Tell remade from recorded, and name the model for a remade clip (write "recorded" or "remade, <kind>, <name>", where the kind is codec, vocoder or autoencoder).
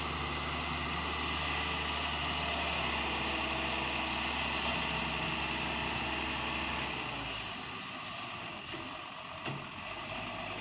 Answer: recorded